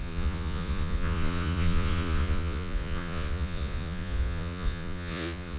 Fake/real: fake